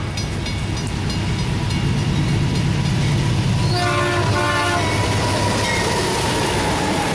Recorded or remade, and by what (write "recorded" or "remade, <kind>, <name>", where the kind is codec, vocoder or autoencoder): recorded